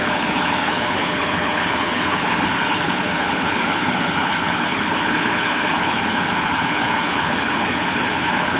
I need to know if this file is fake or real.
fake